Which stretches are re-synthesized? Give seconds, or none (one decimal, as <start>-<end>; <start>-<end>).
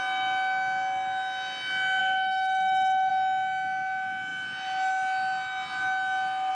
2.0-3.1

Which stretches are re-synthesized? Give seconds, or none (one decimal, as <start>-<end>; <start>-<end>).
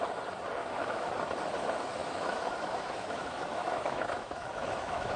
0.6-1.1; 2.0-5.2